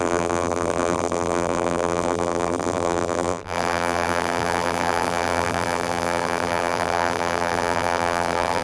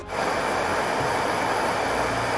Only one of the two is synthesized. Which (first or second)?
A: first